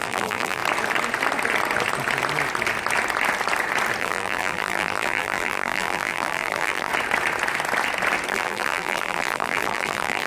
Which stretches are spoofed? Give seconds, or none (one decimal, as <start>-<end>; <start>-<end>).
0.0-0.6; 4.0-6.9; 8.3-10.3